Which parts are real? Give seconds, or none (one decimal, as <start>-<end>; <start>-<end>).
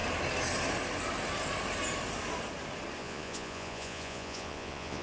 0.0-3.0